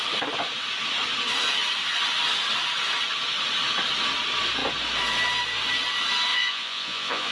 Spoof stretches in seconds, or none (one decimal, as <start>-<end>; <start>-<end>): 6.3-7.3